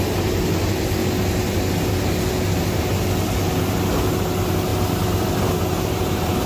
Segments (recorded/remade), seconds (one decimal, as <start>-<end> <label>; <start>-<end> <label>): 0.0-6.5 recorded